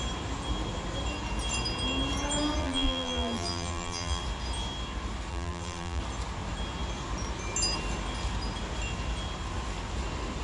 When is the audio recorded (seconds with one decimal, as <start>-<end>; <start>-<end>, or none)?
0.0-2.6; 4.2-5.3; 6.0-10.4